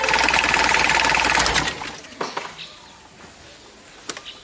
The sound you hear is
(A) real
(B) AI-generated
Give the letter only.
A